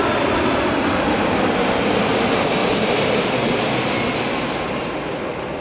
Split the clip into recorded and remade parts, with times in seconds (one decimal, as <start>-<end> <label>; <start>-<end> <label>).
0.0-2.6 recorded; 2.6-3.1 remade; 3.1-5.6 recorded